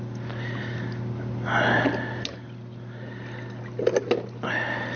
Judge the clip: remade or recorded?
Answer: recorded